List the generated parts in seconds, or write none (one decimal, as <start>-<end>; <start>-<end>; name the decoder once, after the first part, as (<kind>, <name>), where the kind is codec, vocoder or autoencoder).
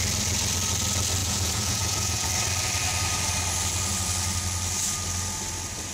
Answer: 1.2-2.3 (vocoder, Vocos)